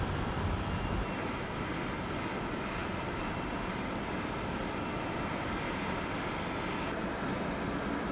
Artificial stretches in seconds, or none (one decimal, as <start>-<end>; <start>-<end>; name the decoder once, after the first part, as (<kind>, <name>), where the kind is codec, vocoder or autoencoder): none